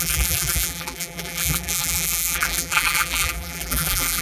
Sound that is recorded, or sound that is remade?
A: remade